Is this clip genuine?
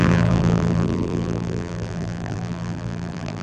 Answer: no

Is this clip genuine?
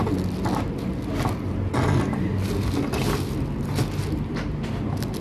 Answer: yes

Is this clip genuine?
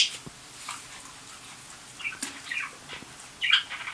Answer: yes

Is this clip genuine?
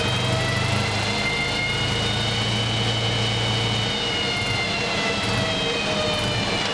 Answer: yes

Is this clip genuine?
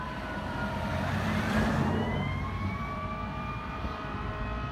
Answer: no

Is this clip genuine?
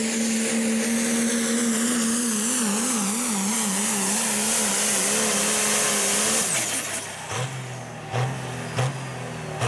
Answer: yes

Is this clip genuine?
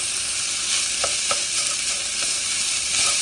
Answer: no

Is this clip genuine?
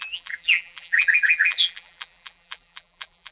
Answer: no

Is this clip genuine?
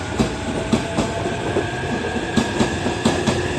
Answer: yes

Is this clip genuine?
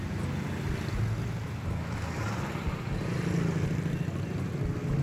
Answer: yes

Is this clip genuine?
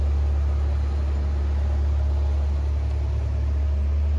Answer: yes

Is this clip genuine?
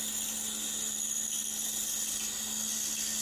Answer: yes